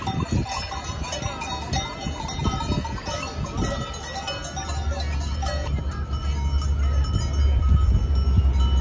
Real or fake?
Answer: real